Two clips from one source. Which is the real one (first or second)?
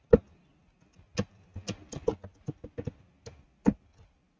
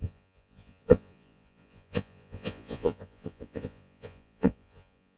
first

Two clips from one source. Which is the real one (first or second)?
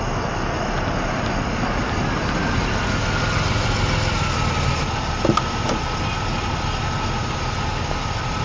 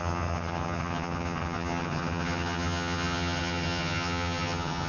first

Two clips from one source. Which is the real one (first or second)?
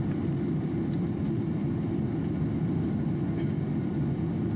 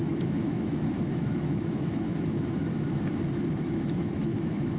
first